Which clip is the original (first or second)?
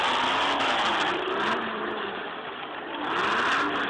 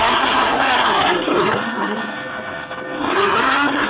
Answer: first